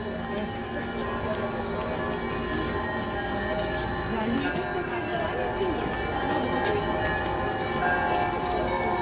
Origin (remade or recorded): recorded